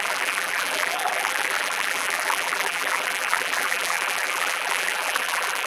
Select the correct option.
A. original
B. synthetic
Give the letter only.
B